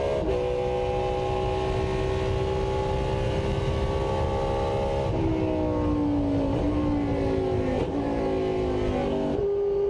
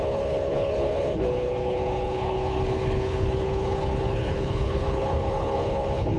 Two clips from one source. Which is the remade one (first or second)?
second